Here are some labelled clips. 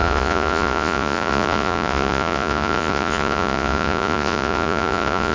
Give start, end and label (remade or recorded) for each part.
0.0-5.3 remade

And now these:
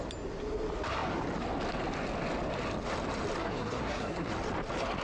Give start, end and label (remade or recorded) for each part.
0.0-3.4 recorded; 3.4-4.3 remade; 4.3-5.0 recorded

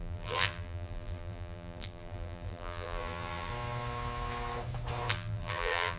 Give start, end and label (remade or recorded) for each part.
0.0-3.5 remade; 3.5-5.1 recorded; 5.1-6.0 remade

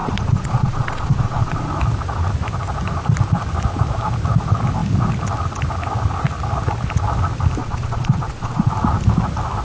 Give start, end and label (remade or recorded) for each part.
0.0-1.7 remade; 1.7-7.6 recorded; 7.6-8.7 remade; 8.7-9.6 recorded